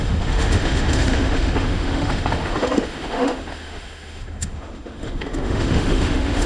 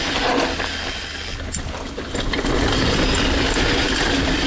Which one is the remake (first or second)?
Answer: first